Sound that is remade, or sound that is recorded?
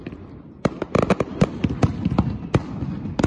recorded